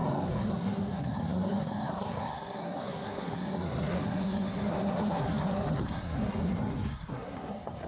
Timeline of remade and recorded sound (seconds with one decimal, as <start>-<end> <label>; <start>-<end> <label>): 0.0-7.9 remade